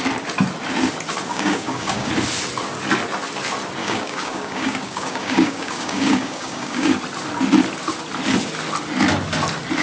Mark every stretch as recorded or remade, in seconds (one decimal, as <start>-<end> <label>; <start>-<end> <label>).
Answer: 0.0-1.3 recorded; 1.3-2.1 remade; 2.1-3.8 recorded; 3.8-7.0 remade; 7.0-9.8 recorded